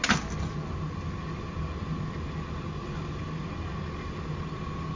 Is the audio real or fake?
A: real